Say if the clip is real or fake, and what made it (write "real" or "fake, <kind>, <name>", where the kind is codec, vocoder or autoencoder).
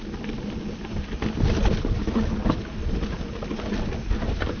real